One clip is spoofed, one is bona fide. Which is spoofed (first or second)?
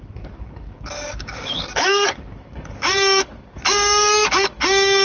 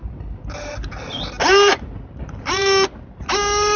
first